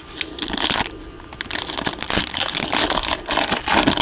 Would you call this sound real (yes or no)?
yes